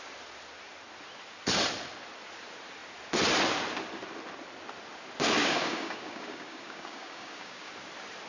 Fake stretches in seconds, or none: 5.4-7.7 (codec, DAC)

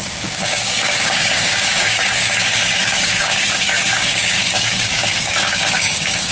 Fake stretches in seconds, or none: 0.0-6.3 (codec, DAC)

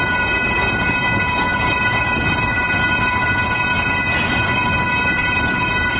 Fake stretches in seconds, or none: none

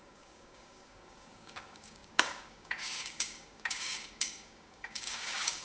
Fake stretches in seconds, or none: 0.0-5.6 (codec, DAC)

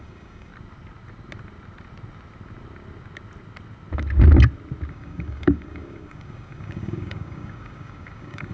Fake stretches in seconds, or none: 0.0-0.5 (codec, DAC); 4.9-8.5

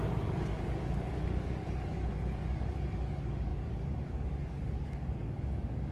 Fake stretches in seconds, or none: 0.0-5.9 (codec, DAC)

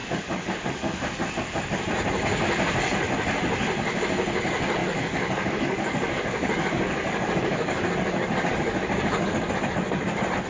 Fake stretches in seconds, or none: 0.0-1.7 (codec, DAC); 4.8-9.5

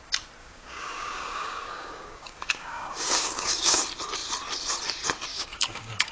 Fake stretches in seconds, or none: 0.4-3.8 (codec, DAC); 5.3-6.1